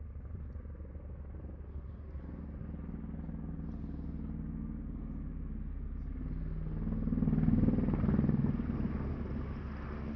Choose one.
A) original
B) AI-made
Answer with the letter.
A